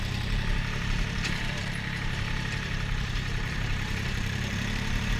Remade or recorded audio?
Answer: remade